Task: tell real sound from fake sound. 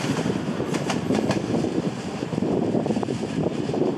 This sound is fake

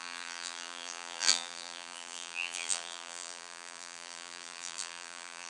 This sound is fake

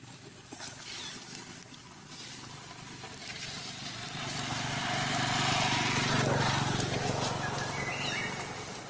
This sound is real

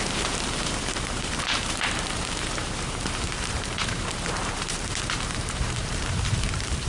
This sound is fake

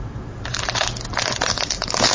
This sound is fake